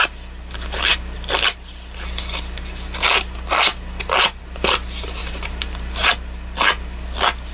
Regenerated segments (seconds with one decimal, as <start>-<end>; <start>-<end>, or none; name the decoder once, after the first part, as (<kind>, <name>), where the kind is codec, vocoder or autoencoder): 5.2-6.1 (vocoder, BigVGAN v2)